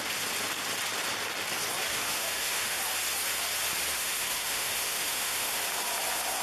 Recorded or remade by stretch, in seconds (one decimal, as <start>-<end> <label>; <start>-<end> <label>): 0.0-1.9 recorded; 1.9-2.8 remade; 2.8-4.0 recorded; 4.0-5.6 remade; 5.6-6.4 recorded